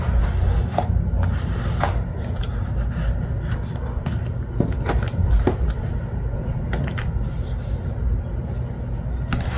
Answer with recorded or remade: recorded